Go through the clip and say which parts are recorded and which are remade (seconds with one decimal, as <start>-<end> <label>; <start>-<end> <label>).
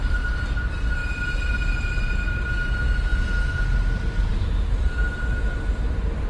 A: 0.0-6.3 recorded